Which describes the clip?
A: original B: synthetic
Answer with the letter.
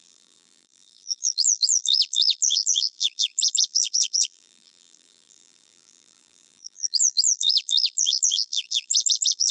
B